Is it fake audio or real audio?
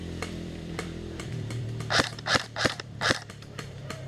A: fake